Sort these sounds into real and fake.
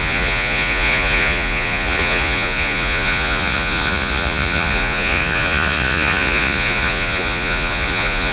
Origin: fake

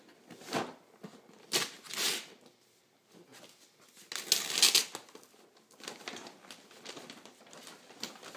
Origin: real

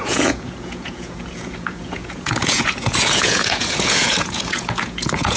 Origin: fake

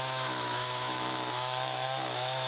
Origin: fake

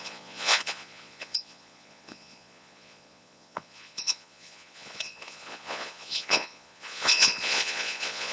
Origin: fake